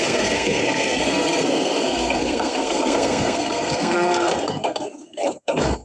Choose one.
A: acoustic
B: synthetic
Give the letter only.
B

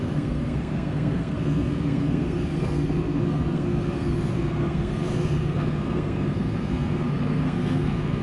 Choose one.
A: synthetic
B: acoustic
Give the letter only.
A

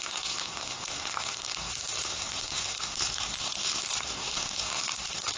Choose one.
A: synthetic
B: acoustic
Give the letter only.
A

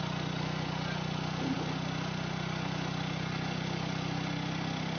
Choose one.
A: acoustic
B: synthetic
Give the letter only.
A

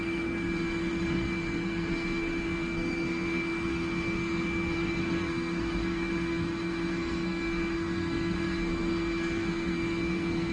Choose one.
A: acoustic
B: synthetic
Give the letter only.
B